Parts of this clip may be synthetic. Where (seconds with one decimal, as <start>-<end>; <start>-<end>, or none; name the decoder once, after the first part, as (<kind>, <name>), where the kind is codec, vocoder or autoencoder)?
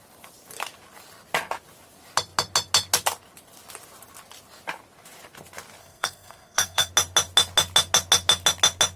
5.8-6.9 (codec, SNAC)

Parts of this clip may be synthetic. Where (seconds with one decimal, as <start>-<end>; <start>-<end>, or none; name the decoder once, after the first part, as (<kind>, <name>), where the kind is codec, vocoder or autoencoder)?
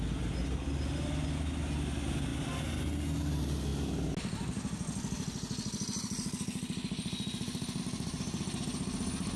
none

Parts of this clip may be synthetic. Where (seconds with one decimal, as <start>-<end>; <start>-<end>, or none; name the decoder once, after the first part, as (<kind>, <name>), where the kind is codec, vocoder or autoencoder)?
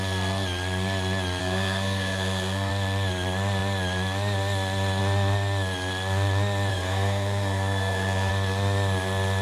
1.4-2.7 (codec, SNAC); 6.7-8.3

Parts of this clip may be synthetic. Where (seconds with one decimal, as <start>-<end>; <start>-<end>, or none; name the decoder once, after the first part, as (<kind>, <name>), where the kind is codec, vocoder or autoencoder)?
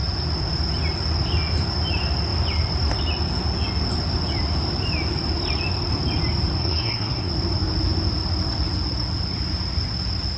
6.6-7.3 (codec, SNAC)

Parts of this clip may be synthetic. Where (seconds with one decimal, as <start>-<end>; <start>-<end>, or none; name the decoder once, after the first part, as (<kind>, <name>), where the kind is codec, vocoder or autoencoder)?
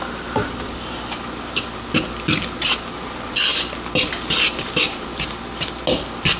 none